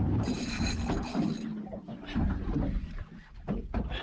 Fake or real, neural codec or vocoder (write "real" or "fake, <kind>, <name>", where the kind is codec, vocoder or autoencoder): real